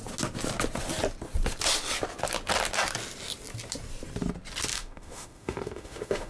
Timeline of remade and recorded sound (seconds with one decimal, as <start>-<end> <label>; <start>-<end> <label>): 0.0-4.7 recorded; 4.7-6.3 remade